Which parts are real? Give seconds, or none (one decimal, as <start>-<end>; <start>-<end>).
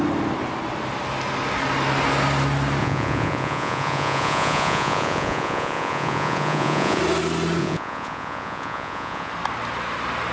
0.0-2.8; 7.0-7.6; 9.3-10.3